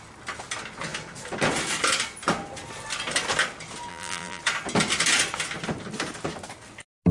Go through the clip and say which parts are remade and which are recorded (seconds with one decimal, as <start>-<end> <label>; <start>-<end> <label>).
0.0-3.9 recorded; 3.9-4.4 remade; 4.4-7.1 recorded